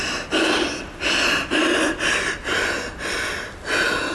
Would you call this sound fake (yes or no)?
no